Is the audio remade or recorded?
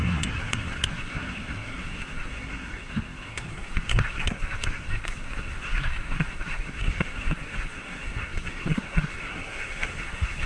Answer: remade